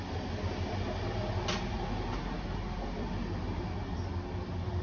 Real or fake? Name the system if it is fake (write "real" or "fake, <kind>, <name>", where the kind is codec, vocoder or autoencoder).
real